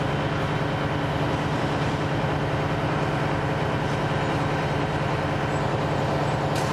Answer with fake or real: real